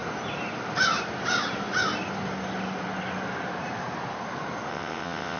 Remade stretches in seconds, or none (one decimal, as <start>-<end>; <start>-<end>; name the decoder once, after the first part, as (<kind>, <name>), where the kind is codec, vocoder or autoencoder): 4.7-5.4 (vocoder, WaveNeXt)